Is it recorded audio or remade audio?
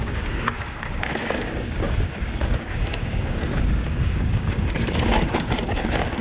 remade